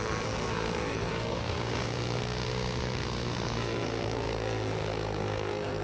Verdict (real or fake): fake